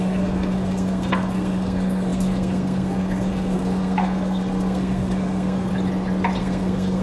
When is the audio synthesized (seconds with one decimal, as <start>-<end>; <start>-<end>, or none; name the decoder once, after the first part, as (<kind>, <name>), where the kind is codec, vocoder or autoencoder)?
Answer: 0.0-5.7 (codec, SNAC); 6.4-7.0